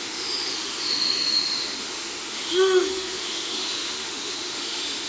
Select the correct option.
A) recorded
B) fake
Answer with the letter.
B